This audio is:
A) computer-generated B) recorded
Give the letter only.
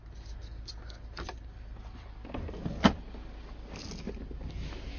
B